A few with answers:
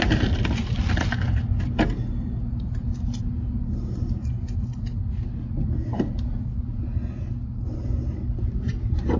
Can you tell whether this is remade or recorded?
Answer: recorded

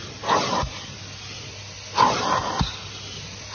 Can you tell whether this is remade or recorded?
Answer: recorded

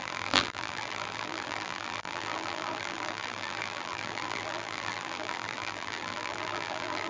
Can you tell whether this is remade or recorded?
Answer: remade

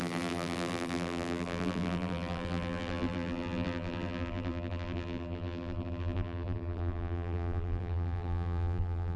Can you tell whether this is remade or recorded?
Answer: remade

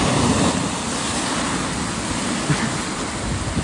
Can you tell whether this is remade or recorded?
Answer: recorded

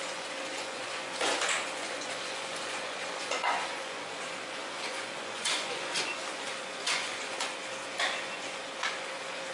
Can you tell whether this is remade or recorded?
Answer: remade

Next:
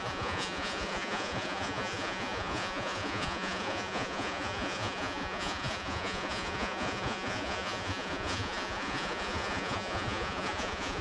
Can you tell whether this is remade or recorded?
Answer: remade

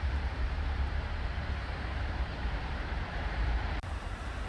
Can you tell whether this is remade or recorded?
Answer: remade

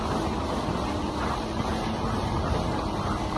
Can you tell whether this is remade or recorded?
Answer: recorded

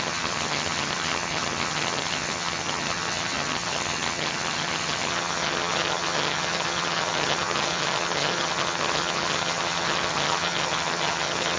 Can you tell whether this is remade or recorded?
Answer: remade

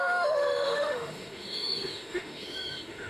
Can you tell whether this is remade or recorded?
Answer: remade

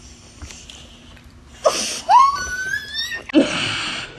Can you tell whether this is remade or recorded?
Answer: recorded